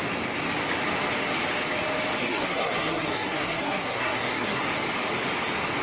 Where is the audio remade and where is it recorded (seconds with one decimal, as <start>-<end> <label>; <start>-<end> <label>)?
0.0-2.2 recorded; 2.2-4.6 remade; 4.6-5.8 recorded